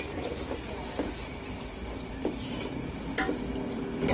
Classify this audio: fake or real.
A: real